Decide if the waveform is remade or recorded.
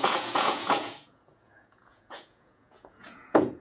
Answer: remade